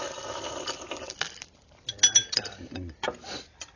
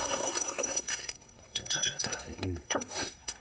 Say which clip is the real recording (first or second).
first